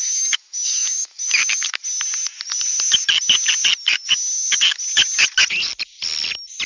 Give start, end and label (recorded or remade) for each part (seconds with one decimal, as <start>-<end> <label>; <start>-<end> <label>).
0.0-1.8 remade; 1.8-6.7 recorded